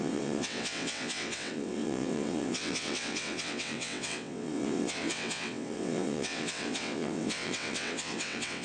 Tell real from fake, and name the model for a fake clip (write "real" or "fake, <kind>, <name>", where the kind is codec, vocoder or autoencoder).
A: fake, vocoder, WaveNeXt